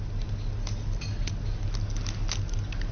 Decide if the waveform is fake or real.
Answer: real